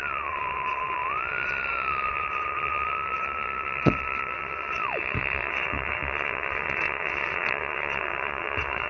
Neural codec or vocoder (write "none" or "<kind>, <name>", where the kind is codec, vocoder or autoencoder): vocoder, WaveNeXt